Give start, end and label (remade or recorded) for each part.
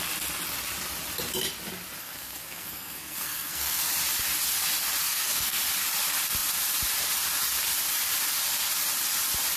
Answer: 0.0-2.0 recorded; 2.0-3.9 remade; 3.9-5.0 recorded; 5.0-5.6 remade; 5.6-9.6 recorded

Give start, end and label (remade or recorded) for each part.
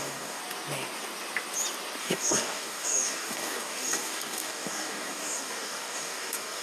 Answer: 0.0-0.4 remade; 0.4-2.0 recorded; 2.0-6.6 remade